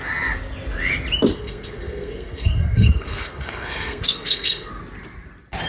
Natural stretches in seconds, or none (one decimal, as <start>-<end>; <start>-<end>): 0.0-1.3; 4.7-5.7

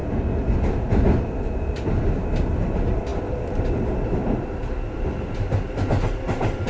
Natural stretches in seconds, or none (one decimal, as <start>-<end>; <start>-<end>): 0.0-6.7

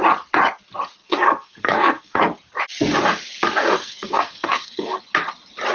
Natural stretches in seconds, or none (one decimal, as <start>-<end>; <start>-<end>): 0.0-1.0; 2.2-3.6; 5.0-5.7

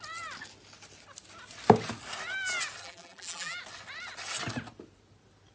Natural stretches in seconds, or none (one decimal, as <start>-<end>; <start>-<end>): 0.0-2.8; 3.6-5.5

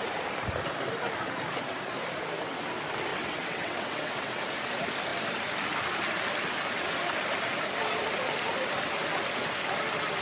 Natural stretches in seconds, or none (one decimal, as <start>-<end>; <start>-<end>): 0.0-3.1; 4.4-10.2

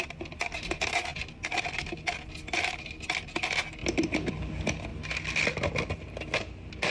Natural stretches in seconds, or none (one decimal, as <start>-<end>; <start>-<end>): 0.0-6.9